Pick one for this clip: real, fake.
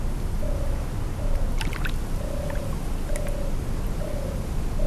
real